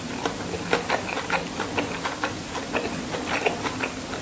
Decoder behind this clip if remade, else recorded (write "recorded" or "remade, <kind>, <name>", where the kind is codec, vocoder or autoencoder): recorded